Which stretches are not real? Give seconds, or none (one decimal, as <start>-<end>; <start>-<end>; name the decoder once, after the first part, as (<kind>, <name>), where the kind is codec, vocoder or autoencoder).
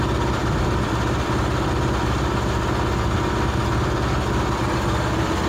none